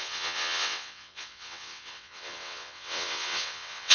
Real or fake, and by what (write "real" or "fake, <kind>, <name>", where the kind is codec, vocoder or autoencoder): fake, vocoder, WaveNeXt